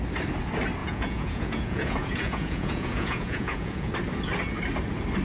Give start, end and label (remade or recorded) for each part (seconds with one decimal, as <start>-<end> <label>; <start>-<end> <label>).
0.0-0.8 recorded; 0.8-3.9 remade; 3.9-5.2 recorded